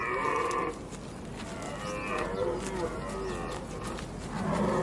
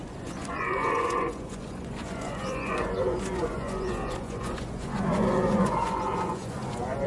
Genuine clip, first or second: first